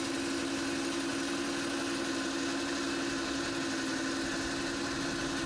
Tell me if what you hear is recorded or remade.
recorded